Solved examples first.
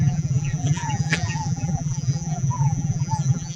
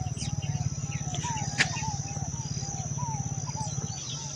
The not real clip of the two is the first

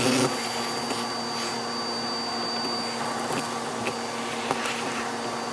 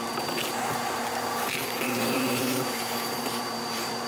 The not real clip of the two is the second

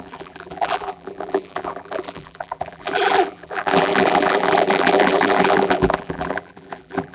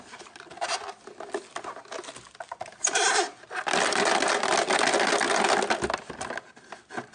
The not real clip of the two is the first